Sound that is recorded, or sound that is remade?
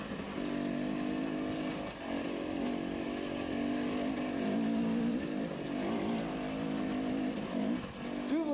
recorded